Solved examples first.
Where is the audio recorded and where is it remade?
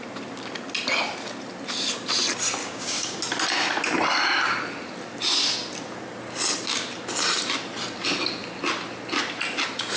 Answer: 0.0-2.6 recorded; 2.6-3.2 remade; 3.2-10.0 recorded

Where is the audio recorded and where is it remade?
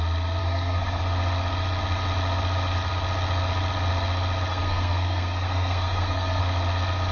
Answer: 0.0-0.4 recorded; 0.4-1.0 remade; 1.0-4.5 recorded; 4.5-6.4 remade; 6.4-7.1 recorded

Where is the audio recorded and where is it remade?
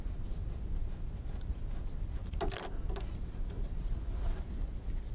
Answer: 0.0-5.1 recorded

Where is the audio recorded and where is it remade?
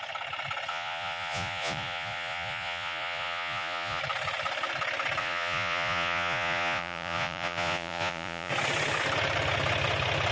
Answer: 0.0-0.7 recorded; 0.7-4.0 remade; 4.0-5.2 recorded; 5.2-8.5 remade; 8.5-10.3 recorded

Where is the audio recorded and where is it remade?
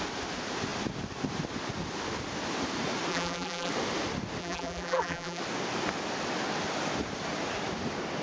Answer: 0.0-3.1 recorded; 3.1-3.7 remade; 3.7-4.4 recorded; 4.4-5.4 remade; 5.4-8.2 recorded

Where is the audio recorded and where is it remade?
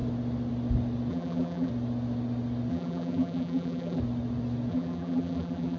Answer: 0.0-1.1 recorded; 1.1-1.7 remade; 1.7-2.7 recorded; 2.7-4.0 remade; 4.0-4.7 recorded; 4.7-5.8 remade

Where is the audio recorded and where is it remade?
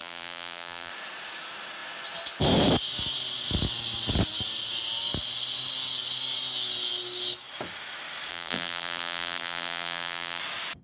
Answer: 0.0-0.9 remade; 0.9-8.3 recorded; 8.3-10.4 remade; 10.4-10.8 recorded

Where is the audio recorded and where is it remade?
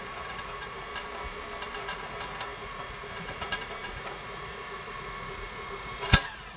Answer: 0.0-0.9 remade; 0.9-1.8 recorded; 1.8-6.6 remade